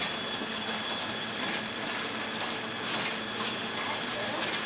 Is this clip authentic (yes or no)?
yes